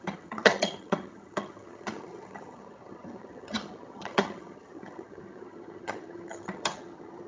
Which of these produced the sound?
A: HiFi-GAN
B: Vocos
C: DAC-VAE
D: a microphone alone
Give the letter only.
A